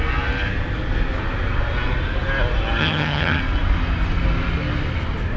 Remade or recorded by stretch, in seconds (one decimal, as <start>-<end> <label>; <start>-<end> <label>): 0.0-2.8 recorded; 2.8-3.4 remade; 3.4-5.4 recorded